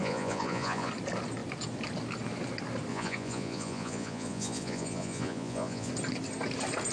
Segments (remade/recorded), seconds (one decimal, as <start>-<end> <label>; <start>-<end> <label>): 0.0-0.9 remade; 0.9-2.9 recorded; 2.9-5.9 remade; 5.9-6.9 recorded